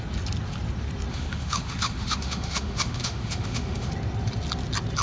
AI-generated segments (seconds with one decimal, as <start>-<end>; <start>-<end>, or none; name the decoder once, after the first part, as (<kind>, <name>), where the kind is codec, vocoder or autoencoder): 1.1-3.9 (autoencoder, DAC-VAE)